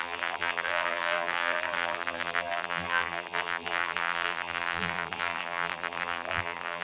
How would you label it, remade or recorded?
remade